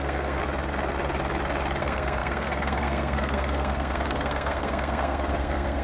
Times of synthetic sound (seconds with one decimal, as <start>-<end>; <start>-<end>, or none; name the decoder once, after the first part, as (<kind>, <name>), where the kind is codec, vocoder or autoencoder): 0.0-0.4 (codec, SNAC); 1.8-5.8